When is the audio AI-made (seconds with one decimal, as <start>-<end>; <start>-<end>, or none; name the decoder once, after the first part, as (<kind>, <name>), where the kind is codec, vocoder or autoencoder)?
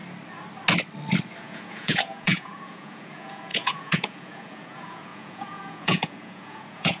1.4-7.0 (vocoder, Vocos)